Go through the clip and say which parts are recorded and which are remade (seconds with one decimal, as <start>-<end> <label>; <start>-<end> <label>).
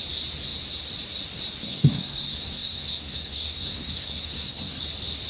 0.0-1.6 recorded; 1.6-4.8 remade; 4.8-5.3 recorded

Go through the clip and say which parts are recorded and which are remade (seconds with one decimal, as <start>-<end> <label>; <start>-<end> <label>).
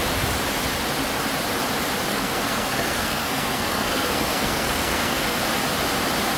0.0-2.1 recorded; 2.1-5.4 remade; 5.4-6.4 recorded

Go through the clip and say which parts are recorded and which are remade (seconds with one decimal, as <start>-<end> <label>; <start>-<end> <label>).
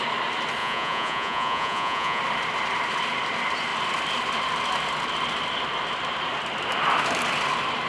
0.0-0.6 recorded; 0.6-2.2 remade; 2.2-7.9 recorded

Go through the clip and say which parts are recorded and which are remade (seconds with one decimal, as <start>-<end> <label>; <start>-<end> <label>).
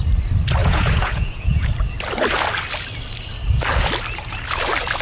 0.0-0.6 recorded; 0.6-1.7 remade; 1.7-5.0 recorded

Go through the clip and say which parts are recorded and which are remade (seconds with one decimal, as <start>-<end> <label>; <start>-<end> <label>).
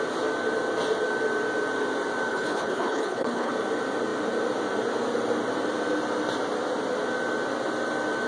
0.0-2.3 recorded; 2.3-3.5 remade; 3.5-8.3 recorded